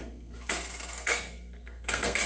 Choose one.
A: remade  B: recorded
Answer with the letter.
A